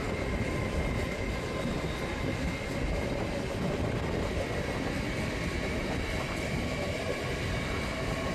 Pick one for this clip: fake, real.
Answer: real